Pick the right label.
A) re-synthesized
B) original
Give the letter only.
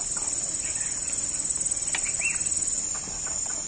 B